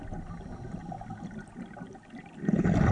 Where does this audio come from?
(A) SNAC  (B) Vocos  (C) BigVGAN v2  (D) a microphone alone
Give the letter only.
D